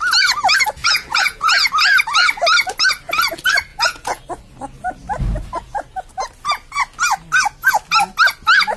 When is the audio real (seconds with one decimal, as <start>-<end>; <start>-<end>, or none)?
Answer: 0.0-0.8; 1.7-3.7; 4.2-8.8